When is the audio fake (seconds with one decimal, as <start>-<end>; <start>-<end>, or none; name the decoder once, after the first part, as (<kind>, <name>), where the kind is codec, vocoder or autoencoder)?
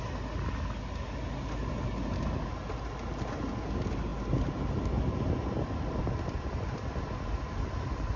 none